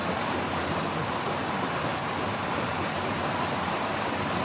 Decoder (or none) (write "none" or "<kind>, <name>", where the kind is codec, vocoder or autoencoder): vocoder, BigVGAN v2